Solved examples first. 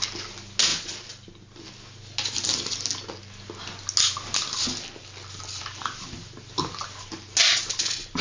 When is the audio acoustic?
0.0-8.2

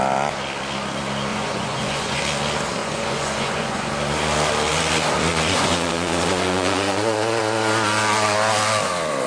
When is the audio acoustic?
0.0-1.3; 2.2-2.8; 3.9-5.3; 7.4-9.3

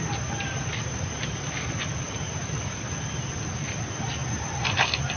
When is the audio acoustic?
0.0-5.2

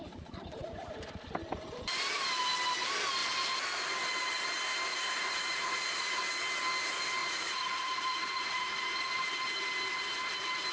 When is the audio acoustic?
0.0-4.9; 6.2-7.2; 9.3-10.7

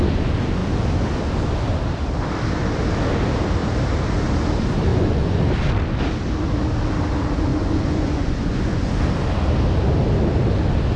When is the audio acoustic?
0.0-4.9; 5.4-7.5; 9.0-11.0

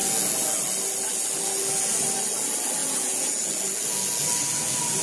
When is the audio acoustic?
0.0-2.8; 3.5-5.0